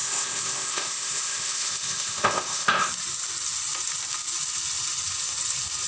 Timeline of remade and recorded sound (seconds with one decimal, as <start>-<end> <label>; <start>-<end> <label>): 0.0-2.9 remade; 2.9-5.9 recorded

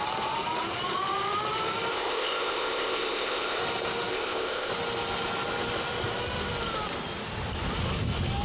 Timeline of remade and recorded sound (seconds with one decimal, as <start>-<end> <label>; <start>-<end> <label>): 0.0-1.9 recorded; 1.9-3.6 remade; 3.6-4.1 recorded; 4.1-4.7 remade; 4.7-8.4 recorded

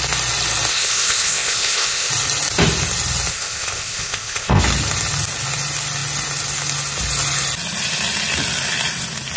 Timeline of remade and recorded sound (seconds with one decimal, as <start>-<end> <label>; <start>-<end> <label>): 0.0-0.7 recorded; 0.7-2.1 remade; 2.1-3.3 recorded; 3.3-4.6 remade; 4.6-9.4 recorded